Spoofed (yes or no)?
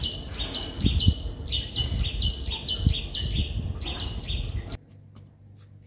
no